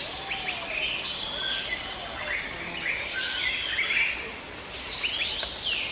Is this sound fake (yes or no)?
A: no